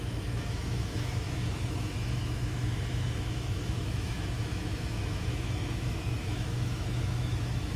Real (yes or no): no